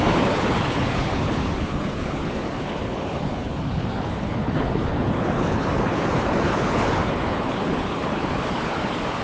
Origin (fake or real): fake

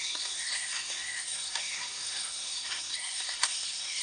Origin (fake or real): fake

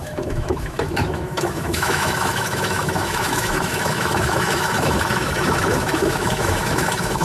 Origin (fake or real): fake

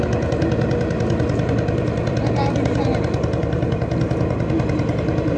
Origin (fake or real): real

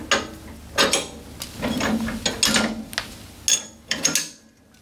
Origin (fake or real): real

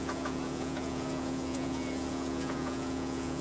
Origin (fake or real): fake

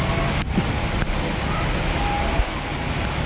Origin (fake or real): real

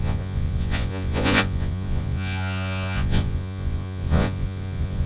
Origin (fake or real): fake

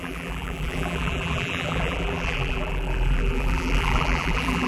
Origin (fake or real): fake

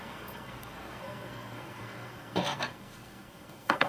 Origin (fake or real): fake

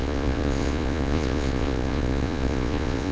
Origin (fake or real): fake